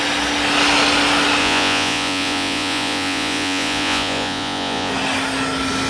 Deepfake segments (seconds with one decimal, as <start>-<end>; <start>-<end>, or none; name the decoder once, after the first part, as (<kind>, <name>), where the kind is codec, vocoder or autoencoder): 1.4-4.9 (vocoder, Vocos)